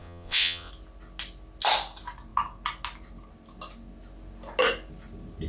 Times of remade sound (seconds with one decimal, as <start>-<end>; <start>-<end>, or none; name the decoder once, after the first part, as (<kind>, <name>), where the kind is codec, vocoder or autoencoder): 0.0-0.7 (vocoder, WaveNeXt)